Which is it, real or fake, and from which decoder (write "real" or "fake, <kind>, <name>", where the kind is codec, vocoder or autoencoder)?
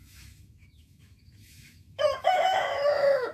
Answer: fake, autoencoder, DAC-VAE